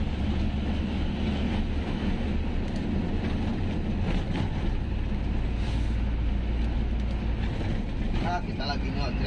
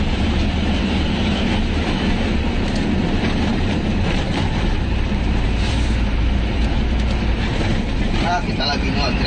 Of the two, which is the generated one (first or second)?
second